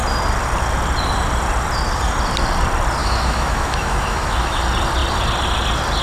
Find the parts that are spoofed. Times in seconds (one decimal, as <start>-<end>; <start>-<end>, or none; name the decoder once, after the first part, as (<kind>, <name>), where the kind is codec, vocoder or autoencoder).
3.0-4.6 (autoencoder, DAC-VAE)